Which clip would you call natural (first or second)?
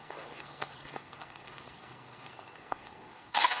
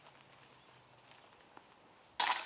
second